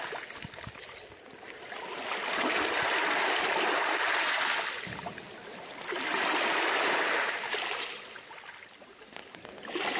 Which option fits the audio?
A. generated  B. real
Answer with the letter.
B